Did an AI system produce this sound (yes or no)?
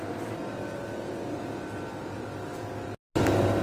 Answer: no